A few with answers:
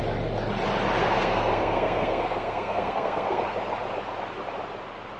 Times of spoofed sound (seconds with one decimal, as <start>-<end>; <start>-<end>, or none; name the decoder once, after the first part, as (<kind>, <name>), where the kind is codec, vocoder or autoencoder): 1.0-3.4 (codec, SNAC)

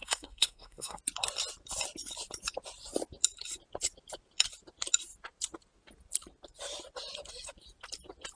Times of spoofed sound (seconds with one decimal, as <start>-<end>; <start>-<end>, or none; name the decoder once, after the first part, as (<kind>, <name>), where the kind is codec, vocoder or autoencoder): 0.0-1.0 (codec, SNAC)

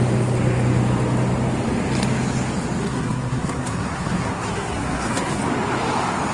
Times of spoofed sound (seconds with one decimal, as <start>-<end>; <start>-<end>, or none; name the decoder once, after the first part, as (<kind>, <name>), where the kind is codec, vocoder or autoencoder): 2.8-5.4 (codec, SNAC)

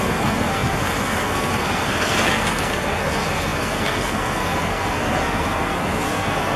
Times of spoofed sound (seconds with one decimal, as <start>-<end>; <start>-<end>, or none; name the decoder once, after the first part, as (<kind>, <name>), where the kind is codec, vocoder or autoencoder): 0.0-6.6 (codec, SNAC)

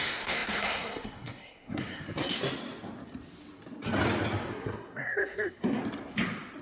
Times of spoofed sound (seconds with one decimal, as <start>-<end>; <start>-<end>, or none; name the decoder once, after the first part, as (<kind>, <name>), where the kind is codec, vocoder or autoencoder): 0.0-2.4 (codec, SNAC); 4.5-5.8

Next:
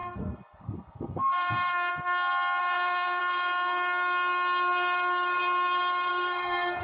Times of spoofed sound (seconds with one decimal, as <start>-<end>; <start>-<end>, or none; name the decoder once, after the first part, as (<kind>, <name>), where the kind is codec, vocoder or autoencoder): 0.0-1.9 (codec, SNAC); 2.6-3.2; 6.1-6.8

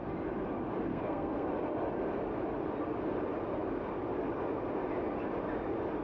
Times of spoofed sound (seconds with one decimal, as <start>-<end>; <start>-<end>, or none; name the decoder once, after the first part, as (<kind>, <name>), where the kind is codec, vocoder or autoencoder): 0.9-1.5 (codec, SNAC)